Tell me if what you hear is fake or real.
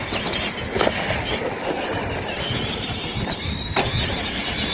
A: real